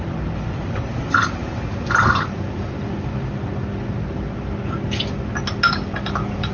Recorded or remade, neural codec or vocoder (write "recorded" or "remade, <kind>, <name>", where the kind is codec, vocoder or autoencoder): recorded